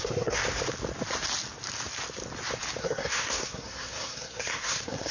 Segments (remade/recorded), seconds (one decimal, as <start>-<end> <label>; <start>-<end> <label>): 0.0-0.4 remade; 0.4-2.8 recorded; 2.8-5.1 remade